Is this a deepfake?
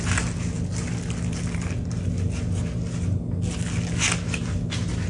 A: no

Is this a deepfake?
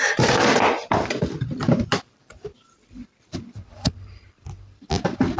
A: yes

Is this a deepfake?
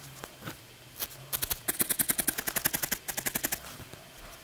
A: no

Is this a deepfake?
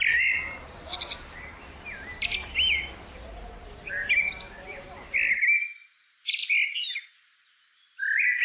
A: yes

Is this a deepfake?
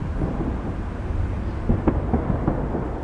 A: no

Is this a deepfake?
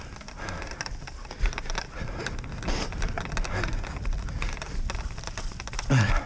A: no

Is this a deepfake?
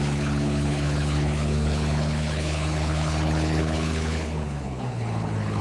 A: yes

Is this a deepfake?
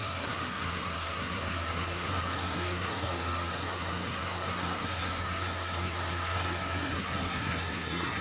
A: yes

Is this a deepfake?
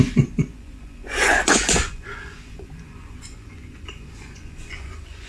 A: yes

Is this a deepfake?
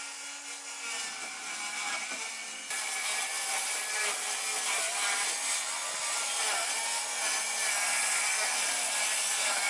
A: no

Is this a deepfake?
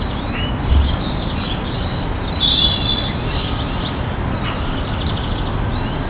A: no